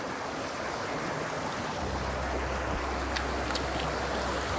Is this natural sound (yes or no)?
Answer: yes